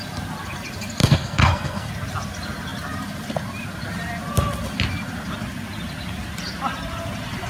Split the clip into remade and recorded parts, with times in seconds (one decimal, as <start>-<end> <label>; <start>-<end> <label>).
0.0-1.0 recorded; 1.0-1.9 remade; 1.9-7.5 recorded